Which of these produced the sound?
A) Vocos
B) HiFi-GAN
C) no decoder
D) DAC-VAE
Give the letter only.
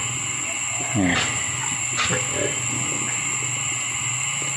C